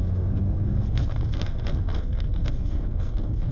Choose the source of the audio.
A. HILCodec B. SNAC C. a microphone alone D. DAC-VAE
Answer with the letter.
B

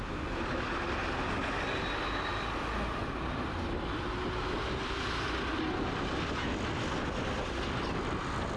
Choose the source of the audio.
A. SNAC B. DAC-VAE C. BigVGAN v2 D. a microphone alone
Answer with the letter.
D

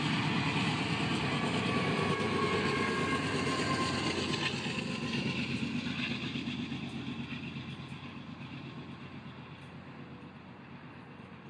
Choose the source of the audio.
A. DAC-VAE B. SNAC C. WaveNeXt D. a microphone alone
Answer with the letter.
D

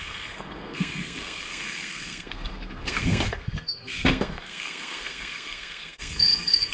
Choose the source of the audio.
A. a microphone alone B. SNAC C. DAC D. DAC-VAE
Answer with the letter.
B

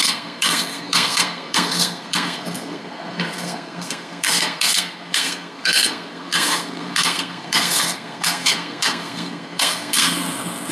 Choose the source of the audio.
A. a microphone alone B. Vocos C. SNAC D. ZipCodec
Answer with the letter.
C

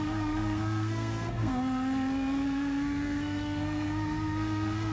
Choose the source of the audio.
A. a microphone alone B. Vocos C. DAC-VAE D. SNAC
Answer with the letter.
D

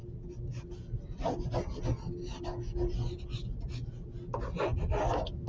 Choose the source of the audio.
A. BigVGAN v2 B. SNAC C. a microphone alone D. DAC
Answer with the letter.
C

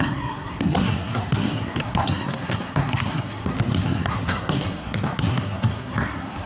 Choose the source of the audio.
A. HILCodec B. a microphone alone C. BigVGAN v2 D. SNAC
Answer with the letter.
D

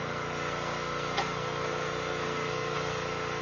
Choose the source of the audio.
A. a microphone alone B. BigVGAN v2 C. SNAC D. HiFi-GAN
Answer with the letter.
C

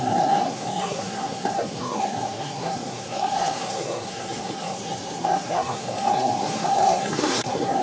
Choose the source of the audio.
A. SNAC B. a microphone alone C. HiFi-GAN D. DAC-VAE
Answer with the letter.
A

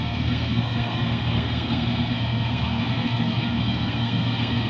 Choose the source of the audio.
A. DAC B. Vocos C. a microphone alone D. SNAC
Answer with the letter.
D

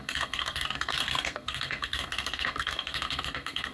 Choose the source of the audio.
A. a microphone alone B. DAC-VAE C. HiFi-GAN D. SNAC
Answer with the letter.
D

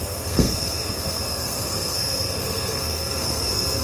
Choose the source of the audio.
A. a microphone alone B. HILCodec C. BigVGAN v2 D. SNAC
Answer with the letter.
D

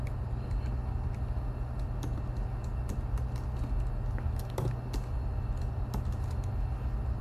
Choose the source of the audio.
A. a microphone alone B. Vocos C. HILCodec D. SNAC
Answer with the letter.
A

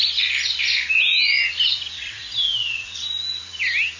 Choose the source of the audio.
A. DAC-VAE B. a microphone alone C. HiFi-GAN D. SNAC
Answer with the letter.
B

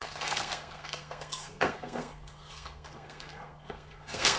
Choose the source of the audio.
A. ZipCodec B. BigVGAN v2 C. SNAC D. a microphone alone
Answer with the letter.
C